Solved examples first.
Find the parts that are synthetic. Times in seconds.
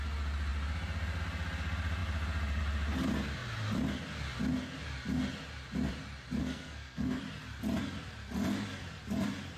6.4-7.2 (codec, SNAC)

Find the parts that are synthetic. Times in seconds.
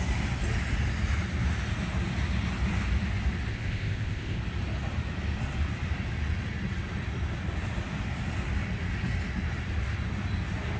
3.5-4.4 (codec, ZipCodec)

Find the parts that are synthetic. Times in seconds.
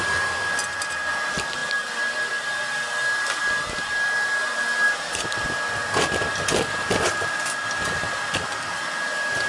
none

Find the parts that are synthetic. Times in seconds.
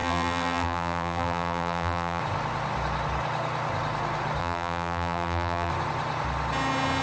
0.0-2.2 (vocoder, BigVGAN v2); 4.4-5.7